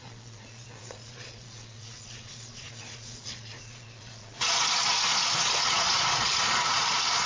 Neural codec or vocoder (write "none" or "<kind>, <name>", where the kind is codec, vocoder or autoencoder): vocoder, Vocos